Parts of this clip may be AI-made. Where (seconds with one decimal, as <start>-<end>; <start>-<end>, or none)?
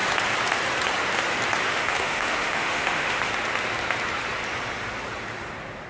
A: 1.7-3.3